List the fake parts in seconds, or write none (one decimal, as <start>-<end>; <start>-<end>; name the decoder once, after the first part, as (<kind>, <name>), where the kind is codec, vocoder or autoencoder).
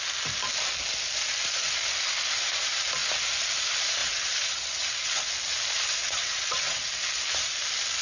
4.0-5.2 (vocoder, WaveNeXt); 6.0-6.9